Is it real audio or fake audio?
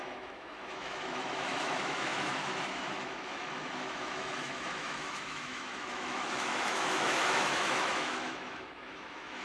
fake